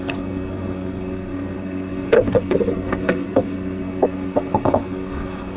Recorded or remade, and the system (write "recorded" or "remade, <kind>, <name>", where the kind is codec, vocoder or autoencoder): remade, codec, SNAC